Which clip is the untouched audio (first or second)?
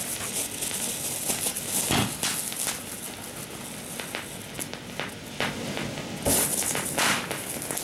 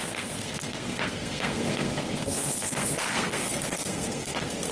first